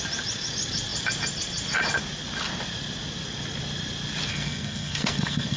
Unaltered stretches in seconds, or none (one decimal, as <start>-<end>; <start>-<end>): 0.0-4.3